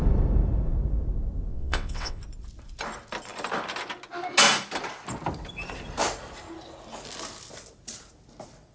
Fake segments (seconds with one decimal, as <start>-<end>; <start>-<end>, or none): 1.5-2.2